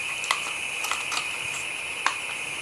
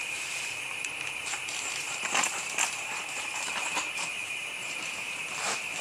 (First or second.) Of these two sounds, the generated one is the second